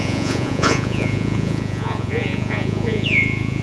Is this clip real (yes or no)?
no